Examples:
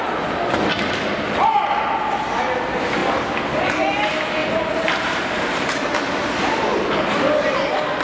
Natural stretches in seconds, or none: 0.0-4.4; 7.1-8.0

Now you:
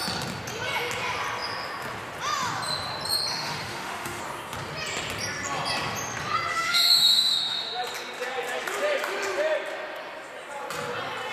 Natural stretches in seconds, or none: 0.0-3.3; 4.2-6.5; 7.8-11.3

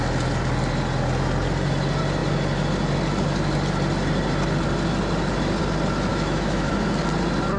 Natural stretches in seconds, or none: 0.0-6.1; 6.7-7.6